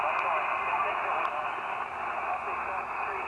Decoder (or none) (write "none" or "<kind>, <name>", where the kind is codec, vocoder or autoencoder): none